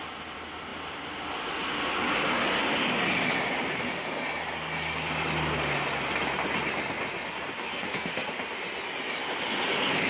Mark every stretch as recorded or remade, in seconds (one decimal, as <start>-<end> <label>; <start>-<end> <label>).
0.0-7.7 recorded; 7.7-8.3 remade; 8.3-10.1 recorded